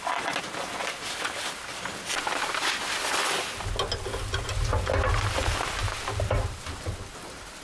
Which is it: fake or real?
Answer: real